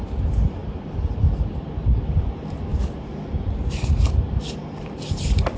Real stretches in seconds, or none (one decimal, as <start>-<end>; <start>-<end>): 0.6-2.1